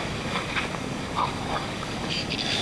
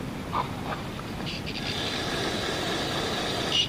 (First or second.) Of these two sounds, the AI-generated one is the first